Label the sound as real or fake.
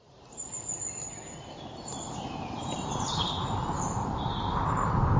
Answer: real